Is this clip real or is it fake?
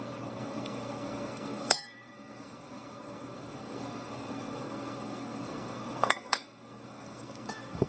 fake